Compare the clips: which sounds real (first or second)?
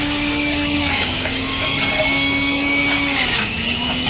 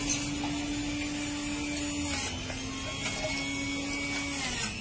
second